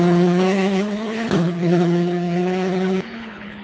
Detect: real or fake fake